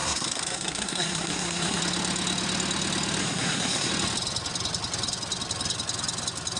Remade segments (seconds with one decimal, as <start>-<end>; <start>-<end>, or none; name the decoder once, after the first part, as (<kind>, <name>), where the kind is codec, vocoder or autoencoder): 0.0-1.8 (codec, SNAC); 3.2-3.9